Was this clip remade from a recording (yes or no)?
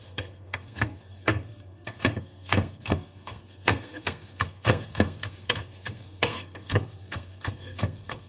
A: yes